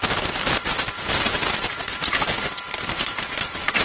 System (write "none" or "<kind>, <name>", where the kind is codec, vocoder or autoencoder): vocoder, BigVGAN v2